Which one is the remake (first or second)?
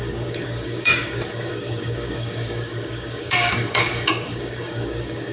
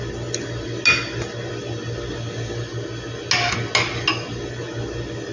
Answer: first